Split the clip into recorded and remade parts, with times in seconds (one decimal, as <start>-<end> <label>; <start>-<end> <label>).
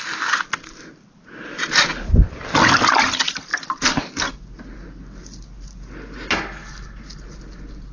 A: 0.0-7.9 recorded